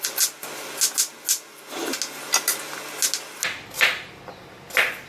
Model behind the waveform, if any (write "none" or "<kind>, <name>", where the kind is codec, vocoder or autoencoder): none